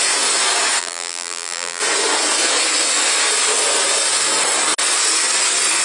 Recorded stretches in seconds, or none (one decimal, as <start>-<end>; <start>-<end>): 0.0-0.8; 1.8-5.8